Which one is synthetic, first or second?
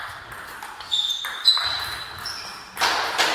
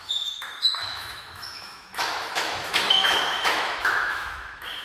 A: second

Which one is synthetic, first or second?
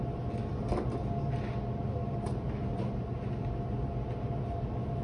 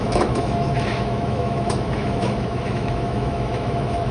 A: second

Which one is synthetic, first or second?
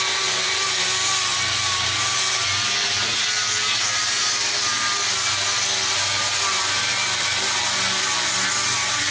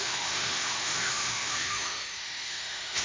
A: second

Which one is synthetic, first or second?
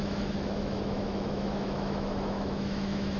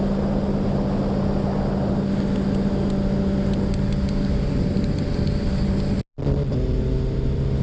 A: first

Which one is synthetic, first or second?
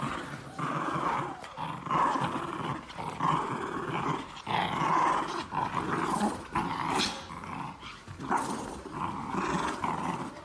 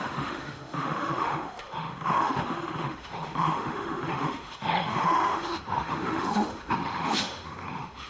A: second